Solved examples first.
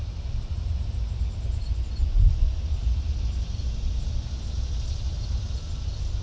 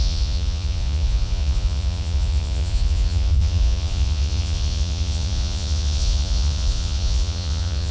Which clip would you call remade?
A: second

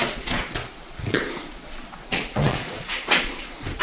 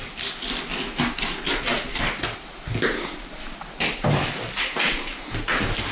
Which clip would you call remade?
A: first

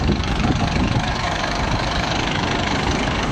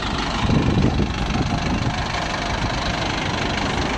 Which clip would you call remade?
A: first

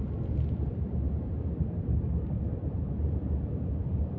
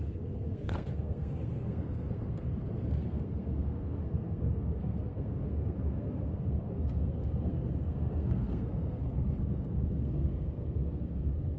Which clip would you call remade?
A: second